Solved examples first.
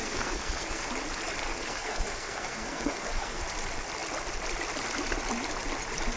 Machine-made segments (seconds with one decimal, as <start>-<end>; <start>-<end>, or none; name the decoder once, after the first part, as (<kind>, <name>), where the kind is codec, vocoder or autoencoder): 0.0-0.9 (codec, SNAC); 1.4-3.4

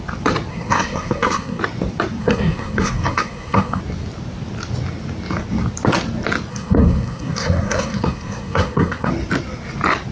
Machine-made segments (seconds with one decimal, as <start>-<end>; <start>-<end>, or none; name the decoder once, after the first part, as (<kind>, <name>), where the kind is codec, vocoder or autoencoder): 0.5-1.6 (codec, SNAC); 2.2-3.8; 6.5-9.1

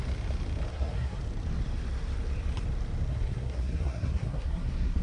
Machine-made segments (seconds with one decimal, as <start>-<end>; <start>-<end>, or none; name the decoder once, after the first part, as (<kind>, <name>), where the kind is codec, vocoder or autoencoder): 0.7-1.2 (codec, SNAC); 3.1-5.0

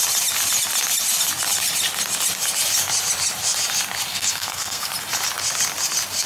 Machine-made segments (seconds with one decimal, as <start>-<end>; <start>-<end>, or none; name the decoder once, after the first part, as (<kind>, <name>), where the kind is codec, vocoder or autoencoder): 4.1-4.9 (codec, SNAC)